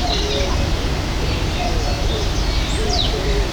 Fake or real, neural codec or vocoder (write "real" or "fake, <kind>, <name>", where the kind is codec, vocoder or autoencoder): real